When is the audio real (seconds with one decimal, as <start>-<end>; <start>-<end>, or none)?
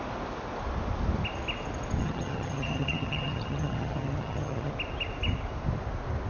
0.0-2.0; 4.7-6.3